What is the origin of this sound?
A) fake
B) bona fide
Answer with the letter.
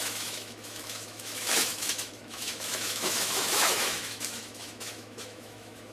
A